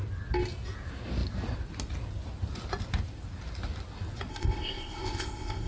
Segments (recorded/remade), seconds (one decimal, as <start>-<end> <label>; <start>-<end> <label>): 0.0-4.3 recorded; 4.3-5.7 remade